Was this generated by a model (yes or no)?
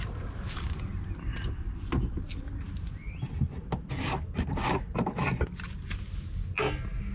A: no